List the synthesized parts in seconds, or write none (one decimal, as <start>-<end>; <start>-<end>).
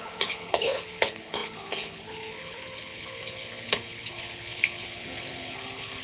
0.0-6.0